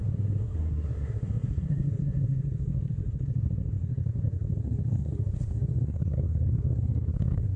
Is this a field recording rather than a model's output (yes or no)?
no